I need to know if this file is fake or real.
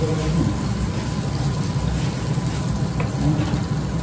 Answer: real